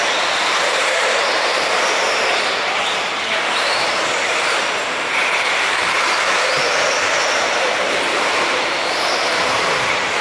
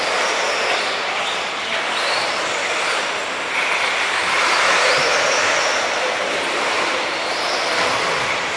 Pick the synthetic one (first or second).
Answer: first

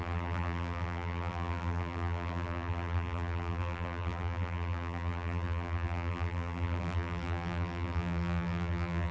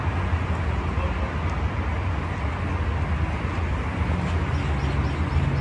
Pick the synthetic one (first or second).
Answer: first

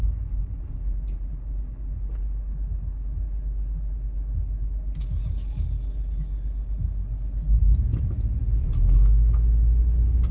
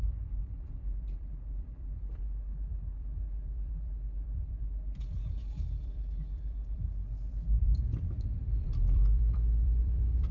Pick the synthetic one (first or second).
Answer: second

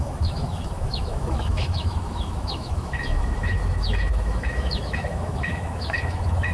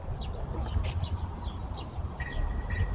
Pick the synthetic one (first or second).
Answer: first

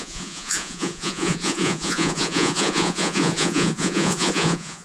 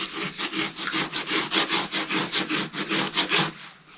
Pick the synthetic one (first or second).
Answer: first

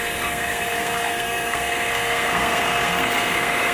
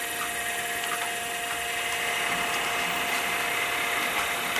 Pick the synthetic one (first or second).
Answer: first